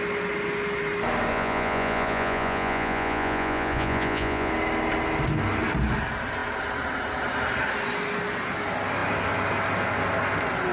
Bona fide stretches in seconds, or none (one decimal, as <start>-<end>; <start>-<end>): 0.0-1.3; 4.5-10.7